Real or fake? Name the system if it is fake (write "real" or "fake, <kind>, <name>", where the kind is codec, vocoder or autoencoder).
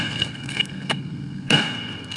fake, codec, SNAC